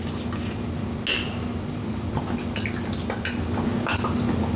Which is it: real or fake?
real